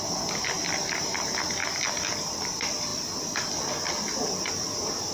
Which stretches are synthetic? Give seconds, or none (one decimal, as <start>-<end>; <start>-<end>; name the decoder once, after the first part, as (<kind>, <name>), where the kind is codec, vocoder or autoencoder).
none